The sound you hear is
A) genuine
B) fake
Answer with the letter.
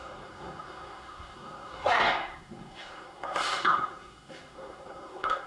B